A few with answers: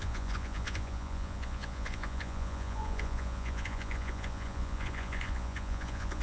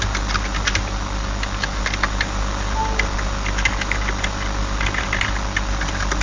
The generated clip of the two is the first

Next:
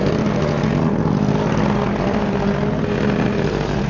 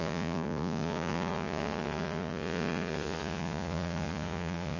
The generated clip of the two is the second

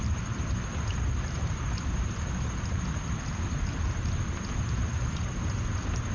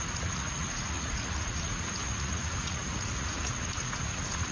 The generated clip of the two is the second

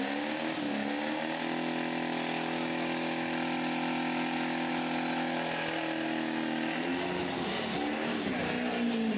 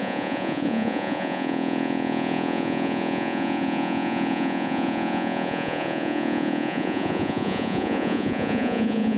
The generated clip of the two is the second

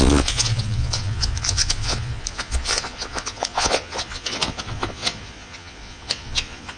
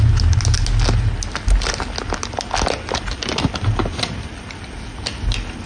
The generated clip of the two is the first